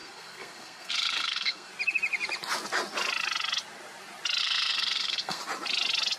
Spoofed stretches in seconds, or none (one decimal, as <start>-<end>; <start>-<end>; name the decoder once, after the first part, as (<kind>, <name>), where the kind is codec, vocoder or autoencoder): 0.0-1.7 (codec, SNAC); 4.4-5.4